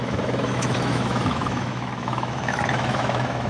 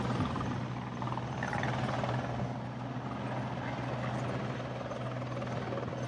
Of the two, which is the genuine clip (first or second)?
second